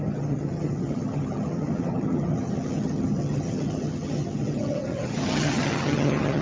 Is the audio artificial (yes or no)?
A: yes